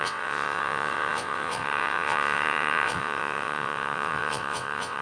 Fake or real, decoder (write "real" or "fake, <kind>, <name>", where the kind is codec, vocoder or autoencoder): fake, vocoder, WaveNeXt